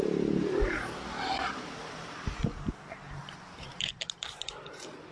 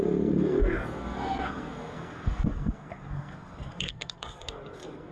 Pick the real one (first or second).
first